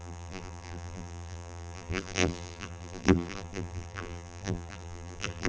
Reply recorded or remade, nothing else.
remade